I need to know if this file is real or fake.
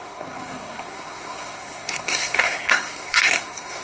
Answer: fake